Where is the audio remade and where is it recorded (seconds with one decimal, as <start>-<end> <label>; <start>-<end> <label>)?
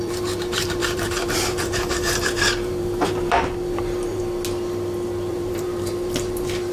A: 0.0-4.2 remade; 4.2-5.3 recorded; 5.3-6.7 remade